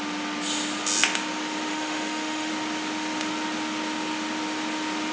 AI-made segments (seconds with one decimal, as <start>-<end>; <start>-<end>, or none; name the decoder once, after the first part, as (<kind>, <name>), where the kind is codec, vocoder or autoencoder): 1.7-2.5 (autoencoder, DAC-VAE)